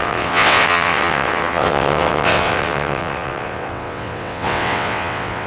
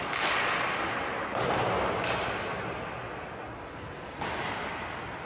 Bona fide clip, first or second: second